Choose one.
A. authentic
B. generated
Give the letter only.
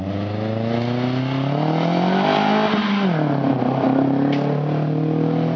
A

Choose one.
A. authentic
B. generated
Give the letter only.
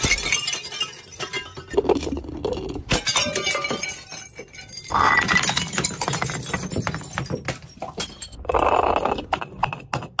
A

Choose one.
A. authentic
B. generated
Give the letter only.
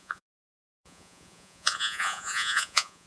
B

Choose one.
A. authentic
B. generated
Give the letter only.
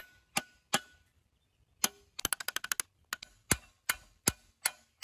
A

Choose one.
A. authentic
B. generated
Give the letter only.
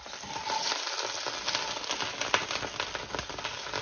A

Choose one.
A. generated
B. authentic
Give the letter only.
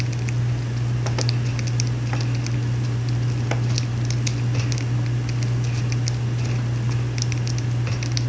B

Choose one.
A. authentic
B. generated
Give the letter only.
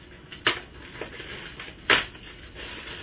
A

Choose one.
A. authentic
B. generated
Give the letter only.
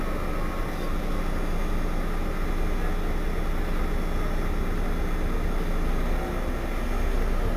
A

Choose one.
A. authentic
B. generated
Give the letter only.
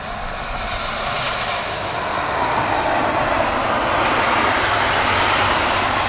A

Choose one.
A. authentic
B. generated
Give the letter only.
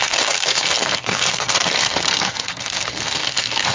B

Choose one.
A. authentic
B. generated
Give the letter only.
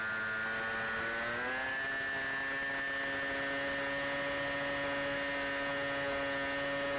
A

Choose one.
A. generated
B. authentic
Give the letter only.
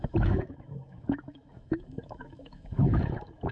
A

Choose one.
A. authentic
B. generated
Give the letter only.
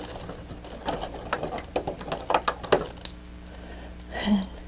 A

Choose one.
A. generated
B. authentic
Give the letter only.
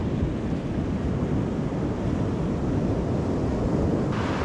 B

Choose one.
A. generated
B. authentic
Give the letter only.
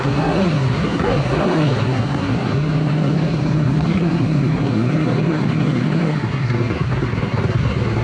A